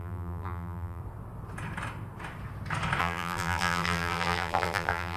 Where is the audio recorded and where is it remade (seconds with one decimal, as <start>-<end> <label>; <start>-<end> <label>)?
0.0-1.0 remade; 1.0-3.0 recorded; 3.0-5.2 remade